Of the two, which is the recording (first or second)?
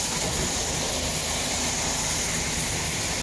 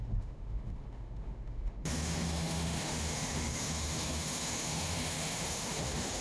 first